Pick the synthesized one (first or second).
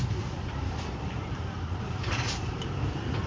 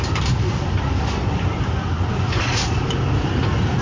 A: first